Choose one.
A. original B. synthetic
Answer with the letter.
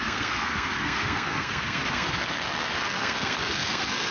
B